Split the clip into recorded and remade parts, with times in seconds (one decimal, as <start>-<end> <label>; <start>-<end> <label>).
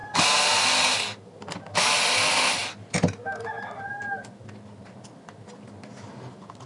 0.0-6.7 recorded